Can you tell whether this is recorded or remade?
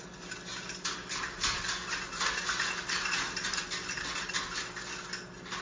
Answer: recorded